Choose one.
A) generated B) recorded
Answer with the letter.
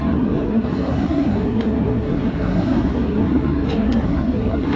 A